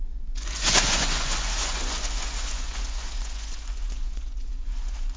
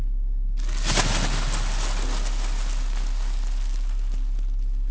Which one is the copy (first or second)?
first